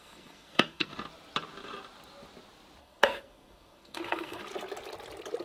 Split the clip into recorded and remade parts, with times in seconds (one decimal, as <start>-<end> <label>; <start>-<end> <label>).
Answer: 0.0-0.9 remade; 0.9-2.8 recorded; 2.8-4.4 remade; 4.4-5.4 recorded